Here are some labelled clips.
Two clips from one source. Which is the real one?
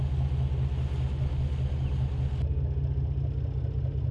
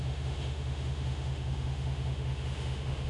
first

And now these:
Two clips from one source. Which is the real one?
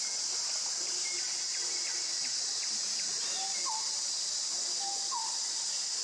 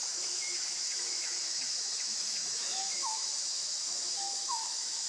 first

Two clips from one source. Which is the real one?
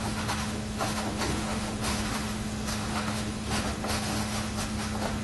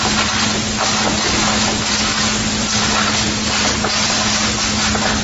second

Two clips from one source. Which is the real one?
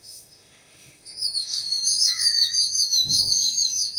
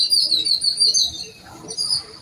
second